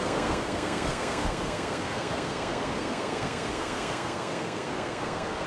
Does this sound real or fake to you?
fake